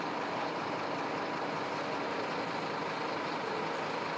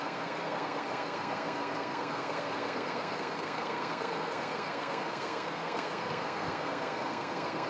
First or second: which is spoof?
second